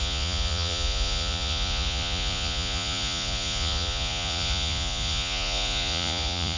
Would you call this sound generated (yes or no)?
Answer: yes